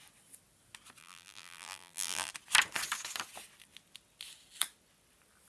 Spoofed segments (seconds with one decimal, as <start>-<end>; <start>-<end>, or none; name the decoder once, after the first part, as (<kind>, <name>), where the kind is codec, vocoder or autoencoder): 1.0-2.3 (vocoder, BigVGAN v2)